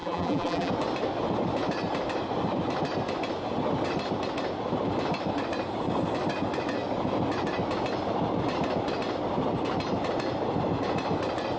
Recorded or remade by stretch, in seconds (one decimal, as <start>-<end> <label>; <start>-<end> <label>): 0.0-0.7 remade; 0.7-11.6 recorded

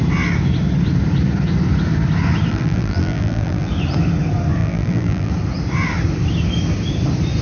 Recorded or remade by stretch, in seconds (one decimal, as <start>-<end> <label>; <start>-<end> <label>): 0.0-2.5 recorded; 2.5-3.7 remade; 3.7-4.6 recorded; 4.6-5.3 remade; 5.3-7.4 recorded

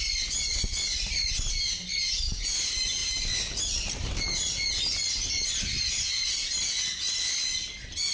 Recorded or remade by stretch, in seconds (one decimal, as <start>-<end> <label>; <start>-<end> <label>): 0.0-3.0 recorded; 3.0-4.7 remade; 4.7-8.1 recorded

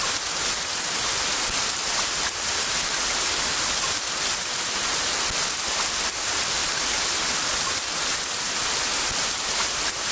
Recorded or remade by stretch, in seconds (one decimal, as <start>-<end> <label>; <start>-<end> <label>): 0.0-10.1 recorded

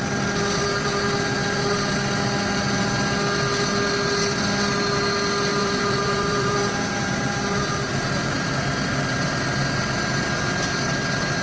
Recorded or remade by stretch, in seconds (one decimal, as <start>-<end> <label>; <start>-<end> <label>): 0.0-5.5 recorded; 5.5-7.7 remade; 7.7-11.4 recorded

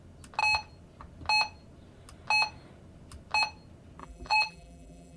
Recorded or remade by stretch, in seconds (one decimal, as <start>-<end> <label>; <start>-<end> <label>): 0.0-4.0 recorded; 4.0-5.2 remade

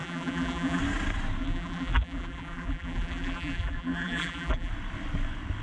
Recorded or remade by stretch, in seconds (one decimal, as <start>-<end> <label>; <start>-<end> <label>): 0.0-0.8 remade; 0.8-1.4 recorded; 1.4-4.7 remade; 4.7-5.6 recorded

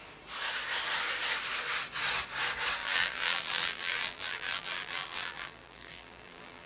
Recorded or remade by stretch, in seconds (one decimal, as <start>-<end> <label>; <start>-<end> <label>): 0.0-2.8 recorded; 2.8-6.7 remade